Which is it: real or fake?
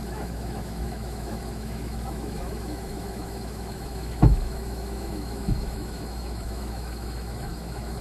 fake